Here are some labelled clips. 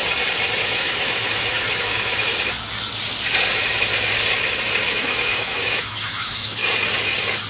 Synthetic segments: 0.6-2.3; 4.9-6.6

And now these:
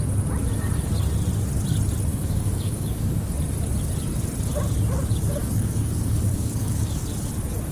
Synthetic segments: 2.1-3.3; 5.4-7.0

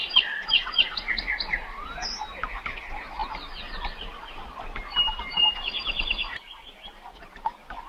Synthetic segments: none